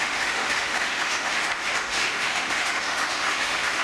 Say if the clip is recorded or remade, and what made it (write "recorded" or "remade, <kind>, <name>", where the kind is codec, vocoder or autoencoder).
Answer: remade, autoencoder, DAC-VAE